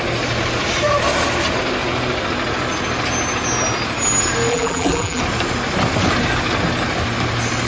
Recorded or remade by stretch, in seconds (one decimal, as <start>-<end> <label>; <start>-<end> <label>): 0.0-4.5 recorded; 4.5-5.2 remade; 5.2-7.7 recorded